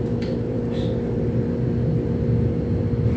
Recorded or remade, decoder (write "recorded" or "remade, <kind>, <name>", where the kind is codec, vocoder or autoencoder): recorded